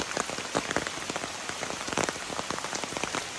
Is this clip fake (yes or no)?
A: no